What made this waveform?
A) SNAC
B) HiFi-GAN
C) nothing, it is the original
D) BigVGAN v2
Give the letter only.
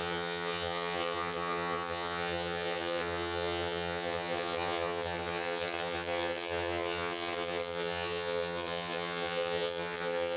B